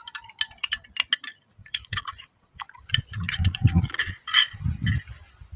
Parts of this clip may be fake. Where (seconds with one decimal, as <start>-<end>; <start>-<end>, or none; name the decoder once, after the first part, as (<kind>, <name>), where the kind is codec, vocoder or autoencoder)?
1.6-4.6 (vocoder, Vocos)